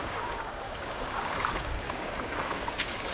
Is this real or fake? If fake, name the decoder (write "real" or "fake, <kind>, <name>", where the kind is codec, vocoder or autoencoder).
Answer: fake, codec, DAC